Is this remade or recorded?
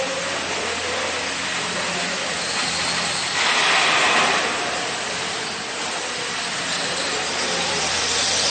remade